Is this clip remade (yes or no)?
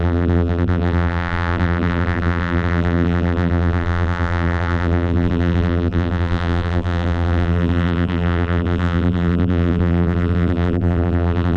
yes